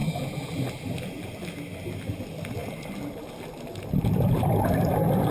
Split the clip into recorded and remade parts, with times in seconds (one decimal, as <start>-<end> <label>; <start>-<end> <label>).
0.0-0.5 remade; 0.5-5.3 recorded